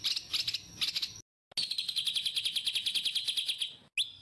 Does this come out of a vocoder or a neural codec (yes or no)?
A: no